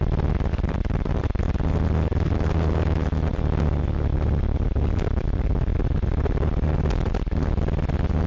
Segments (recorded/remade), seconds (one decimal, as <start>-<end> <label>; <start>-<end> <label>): 0.0-0.5 recorded; 0.5-1.2 remade; 1.2-8.3 recorded